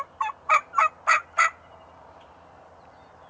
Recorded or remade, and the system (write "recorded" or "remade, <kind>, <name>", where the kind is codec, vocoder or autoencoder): recorded